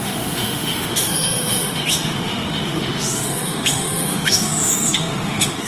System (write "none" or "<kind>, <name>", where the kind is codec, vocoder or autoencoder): autoencoder, DAC-VAE